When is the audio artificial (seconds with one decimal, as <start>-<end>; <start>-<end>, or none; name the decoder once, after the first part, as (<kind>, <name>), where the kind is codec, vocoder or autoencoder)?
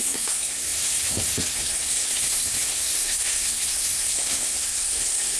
0.0-5.4 (codec, SNAC)